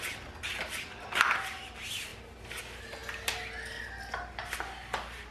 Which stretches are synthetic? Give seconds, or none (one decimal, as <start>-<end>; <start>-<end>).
none